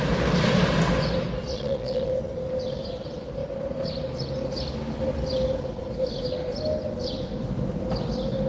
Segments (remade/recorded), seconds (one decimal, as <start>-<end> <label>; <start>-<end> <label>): 0.0-1.5 recorded; 1.5-2.1 remade; 2.1-8.5 recorded